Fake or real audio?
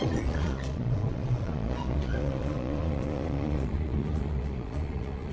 fake